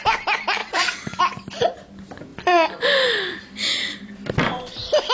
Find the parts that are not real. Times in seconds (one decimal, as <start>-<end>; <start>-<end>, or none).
0.6-1.2